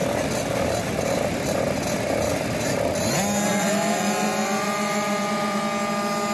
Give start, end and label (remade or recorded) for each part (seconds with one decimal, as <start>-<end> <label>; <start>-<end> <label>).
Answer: 0.0-3.5 recorded; 3.5-5.6 remade; 5.6-6.3 recorded